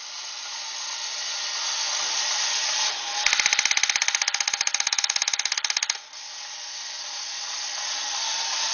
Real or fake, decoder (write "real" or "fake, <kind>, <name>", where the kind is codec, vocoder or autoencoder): real